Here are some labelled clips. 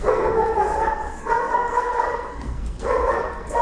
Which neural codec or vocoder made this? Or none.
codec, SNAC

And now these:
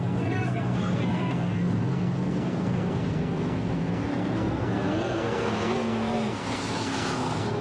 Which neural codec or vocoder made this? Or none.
codec, SNAC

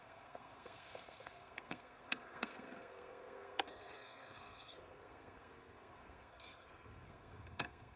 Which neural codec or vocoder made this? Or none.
codec, SNAC